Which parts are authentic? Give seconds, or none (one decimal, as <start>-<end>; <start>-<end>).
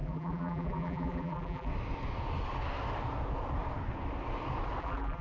1.7-4.8